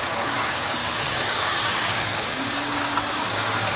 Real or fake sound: fake